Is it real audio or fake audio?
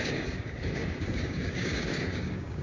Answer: fake